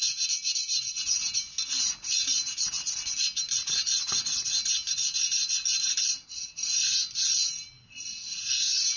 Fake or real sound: real